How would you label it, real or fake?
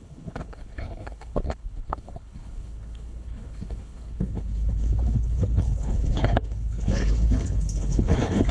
fake